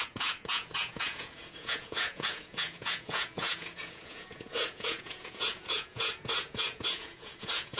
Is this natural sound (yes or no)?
no